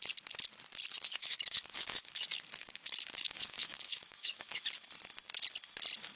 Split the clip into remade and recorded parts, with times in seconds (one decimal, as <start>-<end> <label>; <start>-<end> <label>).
0.0-0.9 recorded; 0.9-4.6 remade; 4.6-6.2 recorded